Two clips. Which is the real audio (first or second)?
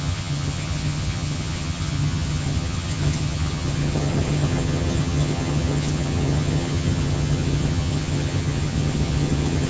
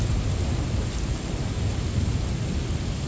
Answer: second